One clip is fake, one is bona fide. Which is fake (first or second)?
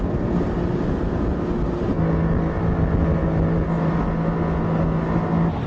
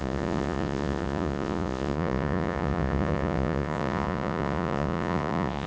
second